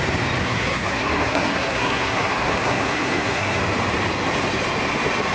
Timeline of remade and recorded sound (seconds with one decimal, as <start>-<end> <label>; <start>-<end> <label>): 0.0-0.4 recorded; 0.4-3.6 remade; 3.6-5.3 recorded

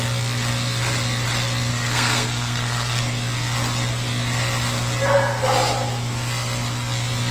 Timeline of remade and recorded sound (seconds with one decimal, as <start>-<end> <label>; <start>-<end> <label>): 0.0-1.7 recorded; 1.7-3.0 remade; 3.0-7.3 recorded